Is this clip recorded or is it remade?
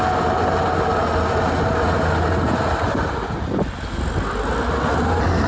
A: recorded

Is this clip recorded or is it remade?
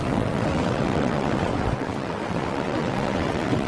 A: remade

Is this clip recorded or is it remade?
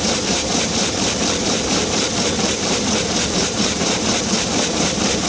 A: remade